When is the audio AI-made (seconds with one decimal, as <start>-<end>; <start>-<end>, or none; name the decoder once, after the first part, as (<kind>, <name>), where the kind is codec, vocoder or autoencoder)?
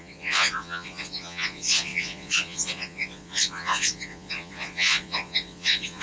0.0-6.0 (vocoder, Vocos)